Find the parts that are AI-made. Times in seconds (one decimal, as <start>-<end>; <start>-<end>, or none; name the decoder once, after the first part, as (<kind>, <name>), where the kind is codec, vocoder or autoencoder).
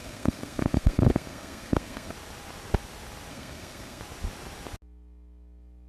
0.0-2.1 (codec, SNAC); 3.3-4.0